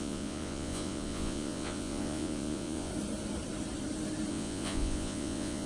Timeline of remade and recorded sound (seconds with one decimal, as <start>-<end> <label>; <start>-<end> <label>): 0.0-2.9 remade; 2.9-4.3 recorded; 4.3-5.7 remade